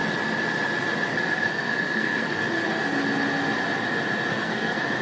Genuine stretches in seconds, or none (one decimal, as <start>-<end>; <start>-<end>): 0.0-1.1; 2.4-4.3